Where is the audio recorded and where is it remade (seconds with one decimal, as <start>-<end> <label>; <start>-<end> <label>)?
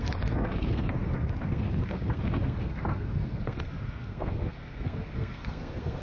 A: 0.0-6.0 remade